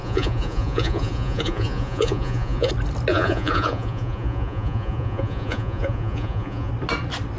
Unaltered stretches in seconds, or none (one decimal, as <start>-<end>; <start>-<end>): 2.7-3.1; 6.7-7.4